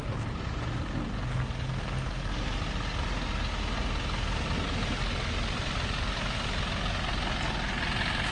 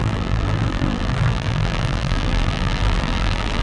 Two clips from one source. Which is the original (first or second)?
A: first